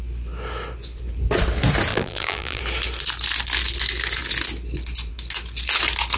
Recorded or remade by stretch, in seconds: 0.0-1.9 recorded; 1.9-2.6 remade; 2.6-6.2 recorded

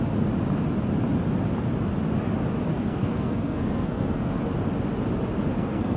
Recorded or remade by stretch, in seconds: 0.0-2.7 recorded; 2.7-4.4 remade; 4.4-5.5 recorded; 5.5-6.0 remade

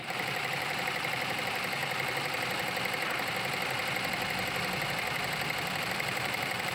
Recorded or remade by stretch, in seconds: 0.0-1.8 remade; 1.8-5.8 recorded; 5.8-6.7 remade

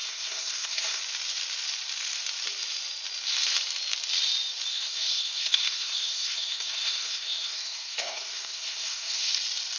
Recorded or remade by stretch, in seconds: 0.0-1.0 remade; 1.0-4.7 recorded; 4.7-9.3 remade; 9.3-9.8 recorded